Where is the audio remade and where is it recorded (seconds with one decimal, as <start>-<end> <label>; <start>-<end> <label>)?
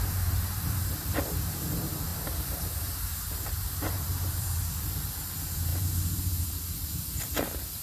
0.0-2.1 remade; 2.1-3.0 recorded; 3.0-7.8 remade